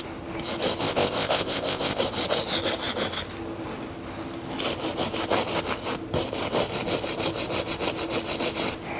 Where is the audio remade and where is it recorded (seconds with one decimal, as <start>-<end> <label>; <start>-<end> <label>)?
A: 0.0-0.8 recorded; 0.8-2.0 remade; 2.0-9.0 recorded